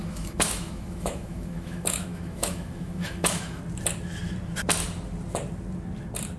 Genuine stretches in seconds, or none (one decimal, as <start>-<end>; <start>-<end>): 3.6-6.4